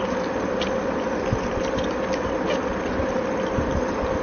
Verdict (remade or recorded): recorded